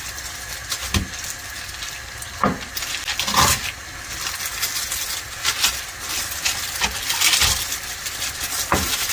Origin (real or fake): real